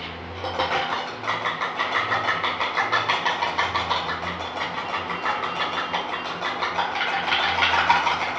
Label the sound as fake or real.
real